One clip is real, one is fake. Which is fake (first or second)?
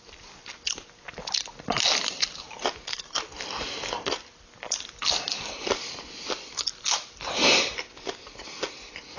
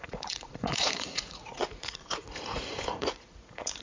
second